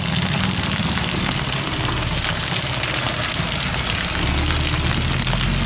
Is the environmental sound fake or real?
real